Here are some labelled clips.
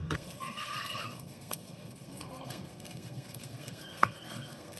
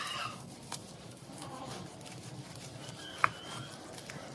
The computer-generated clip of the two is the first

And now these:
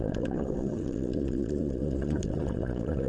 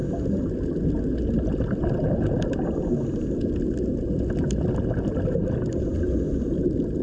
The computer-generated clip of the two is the first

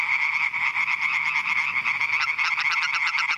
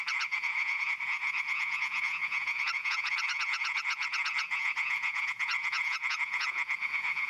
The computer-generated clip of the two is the second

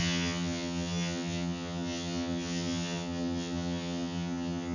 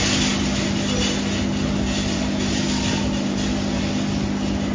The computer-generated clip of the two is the first